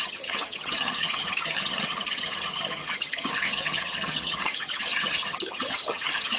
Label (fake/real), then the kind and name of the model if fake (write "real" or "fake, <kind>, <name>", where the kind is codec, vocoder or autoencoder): fake, vocoder, HiFi-GAN